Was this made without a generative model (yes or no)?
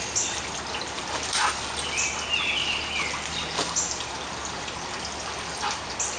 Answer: yes